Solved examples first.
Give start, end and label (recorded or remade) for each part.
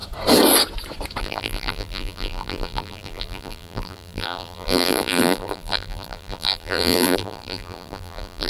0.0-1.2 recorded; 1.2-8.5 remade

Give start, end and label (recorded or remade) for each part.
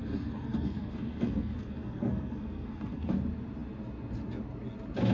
0.0-3.1 remade; 3.1-5.1 recorded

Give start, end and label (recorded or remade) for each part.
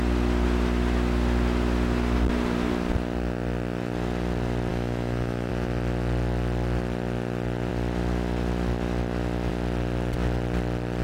0.0-4.7 recorded; 4.7-5.5 remade; 5.5-11.0 recorded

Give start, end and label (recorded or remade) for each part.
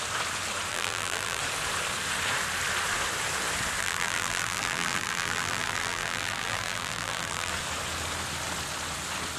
0.0-0.7 recorded; 0.7-1.4 remade; 1.4-3.8 recorded; 3.8-7.5 remade; 7.5-9.4 recorded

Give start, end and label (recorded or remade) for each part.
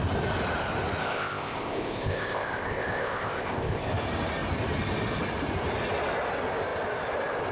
0.0-1.0 recorded; 1.0-3.9 remade; 3.9-7.5 recorded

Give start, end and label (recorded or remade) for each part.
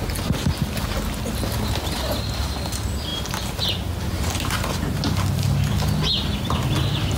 0.0-7.2 recorded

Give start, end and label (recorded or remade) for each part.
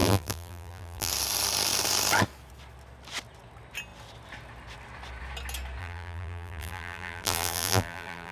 0.0-1.1 remade; 1.1-5.8 recorded; 5.8-8.3 remade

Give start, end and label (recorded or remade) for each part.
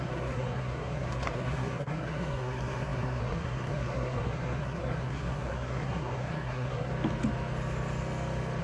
0.0-6.9 remade; 6.9-8.6 recorded